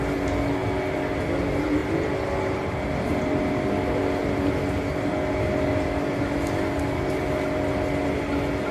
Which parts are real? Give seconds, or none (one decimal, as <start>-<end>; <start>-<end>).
0.0-8.7